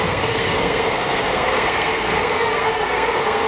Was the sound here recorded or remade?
remade